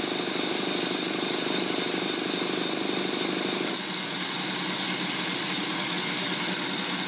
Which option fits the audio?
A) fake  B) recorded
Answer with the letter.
B